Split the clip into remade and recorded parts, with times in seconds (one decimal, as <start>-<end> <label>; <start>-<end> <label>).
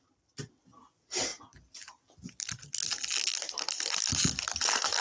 0.0-5.0 recorded